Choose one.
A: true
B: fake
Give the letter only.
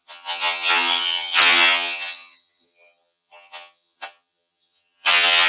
B